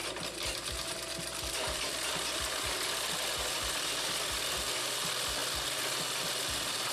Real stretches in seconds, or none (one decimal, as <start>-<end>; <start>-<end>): 0.0-6.9